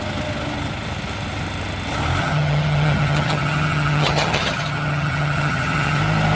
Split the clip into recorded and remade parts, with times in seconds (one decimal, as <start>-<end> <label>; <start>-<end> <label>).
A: 0.0-2.2 recorded; 2.2-6.0 remade; 6.0-6.4 recorded

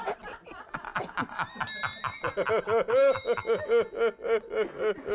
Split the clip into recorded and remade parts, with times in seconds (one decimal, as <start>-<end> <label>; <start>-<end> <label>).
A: 0.0-2.9 recorded; 2.9-3.7 remade; 3.7-5.1 recorded

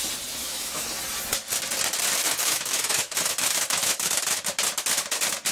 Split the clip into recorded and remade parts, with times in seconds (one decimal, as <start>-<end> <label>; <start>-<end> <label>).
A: 0.0-0.4 recorded; 0.4-0.9 remade; 0.9-2.2 recorded; 2.2-4.4 remade; 4.4-5.5 recorded

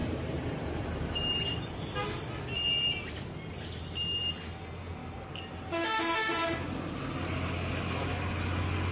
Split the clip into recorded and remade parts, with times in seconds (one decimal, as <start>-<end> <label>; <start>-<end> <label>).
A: 0.0-5.0 recorded; 5.0-6.6 remade; 6.6-8.9 recorded

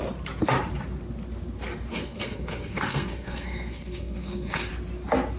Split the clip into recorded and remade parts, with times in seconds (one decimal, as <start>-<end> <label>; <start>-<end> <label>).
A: 0.0-1.9 recorded; 1.9-4.7 remade; 4.7-5.4 recorded

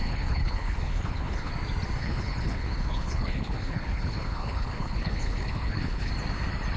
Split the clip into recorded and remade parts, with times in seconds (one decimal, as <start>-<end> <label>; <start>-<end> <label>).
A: 0.0-1.5 remade; 1.5-2.0 recorded; 2.0-6.1 remade; 6.1-6.8 recorded

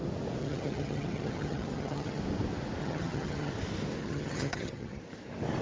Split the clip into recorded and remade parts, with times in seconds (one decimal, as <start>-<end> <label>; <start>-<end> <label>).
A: 0.0-0.4 recorded; 0.4-2.2 remade; 2.2-2.8 recorded; 2.8-3.5 remade; 3.5-4.0 recorded; 4.0-5.0 remade; 5.0-5.6 recorded